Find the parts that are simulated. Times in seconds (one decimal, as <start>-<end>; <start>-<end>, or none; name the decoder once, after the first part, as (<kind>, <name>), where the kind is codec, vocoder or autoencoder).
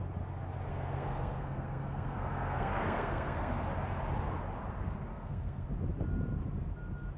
0.7-3.5 (codec, SNAC); 5.1-5.7